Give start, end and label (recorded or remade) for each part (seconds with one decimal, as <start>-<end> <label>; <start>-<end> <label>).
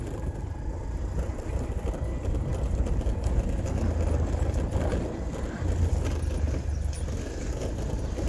0.0-8.3 recorded